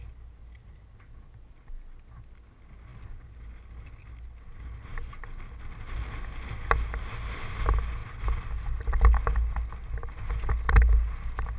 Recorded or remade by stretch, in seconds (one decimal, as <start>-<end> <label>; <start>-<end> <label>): 0.0-11.6 recorded